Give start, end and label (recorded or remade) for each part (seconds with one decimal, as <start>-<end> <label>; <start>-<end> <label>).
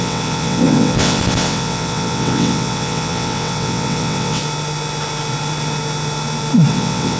0.0-4.4 remade; 4.4-6.7 recorded; 6.7-7.2 remade